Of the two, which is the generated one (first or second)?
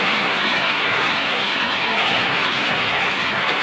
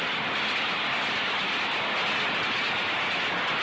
first